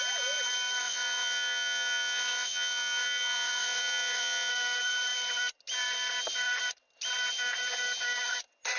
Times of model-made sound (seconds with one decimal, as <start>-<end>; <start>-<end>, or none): 0.8-4.5